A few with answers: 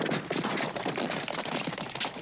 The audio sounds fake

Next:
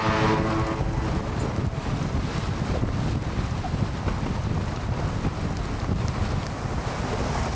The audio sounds real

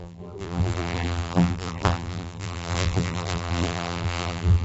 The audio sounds fake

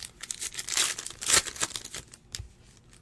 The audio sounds real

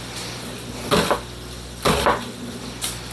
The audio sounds real